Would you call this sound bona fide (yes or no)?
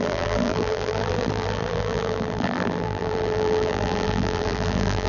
no